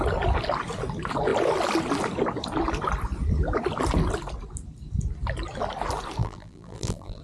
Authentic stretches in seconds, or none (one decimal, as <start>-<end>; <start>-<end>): 0.0-6.2